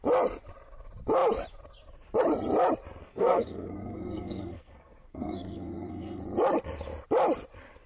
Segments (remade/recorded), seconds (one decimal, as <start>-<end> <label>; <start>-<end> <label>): 0.0-3.0 recorded; 3.0-6.2 remade; 6.2-7.9 recorded

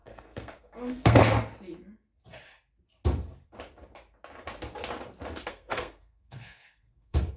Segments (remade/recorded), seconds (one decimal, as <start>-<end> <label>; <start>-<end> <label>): 0.0-1.2 remade; 1.2-5.5 recorded; 5.5-7.4 remade

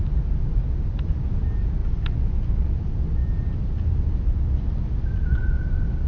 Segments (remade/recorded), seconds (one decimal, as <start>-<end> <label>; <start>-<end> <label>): 0.0-6.1 recorded

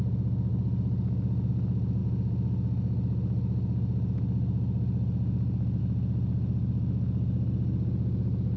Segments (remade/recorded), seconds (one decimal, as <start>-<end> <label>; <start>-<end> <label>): 0.0-8.6 recorded

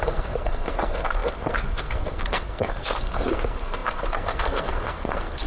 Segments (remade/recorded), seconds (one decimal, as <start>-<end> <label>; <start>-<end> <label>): 0.0-5.5 remade

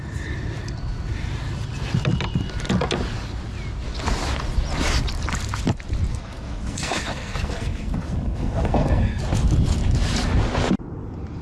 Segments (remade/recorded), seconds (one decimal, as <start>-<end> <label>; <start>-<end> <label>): 0.0-6.1 recorded; 6.1-9.2 remade; 9.2-11.4 recorded

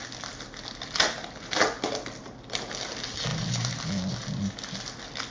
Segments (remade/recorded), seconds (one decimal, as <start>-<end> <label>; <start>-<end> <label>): 0.0-5.3 recorded

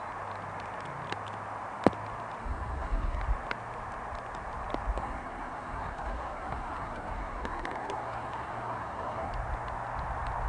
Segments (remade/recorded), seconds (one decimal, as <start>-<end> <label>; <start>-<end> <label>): 0.0-2.4 recorded; 2.4-3.2 remade; 3.2-5.0 recorded; 5.0-9.3 remade; 9.3-10.5 recorded